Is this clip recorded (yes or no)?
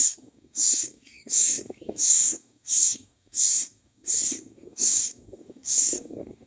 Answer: no